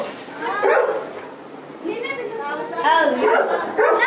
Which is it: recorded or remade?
recorded